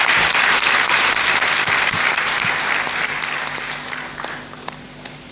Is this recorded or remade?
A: recorded